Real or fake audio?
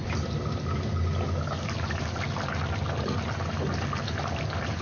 real